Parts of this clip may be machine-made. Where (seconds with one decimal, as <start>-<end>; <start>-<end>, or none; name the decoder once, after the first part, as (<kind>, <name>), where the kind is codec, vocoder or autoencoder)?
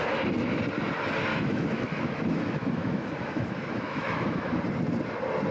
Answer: 1.3-4.6 (autoencoder, DAC-VAE)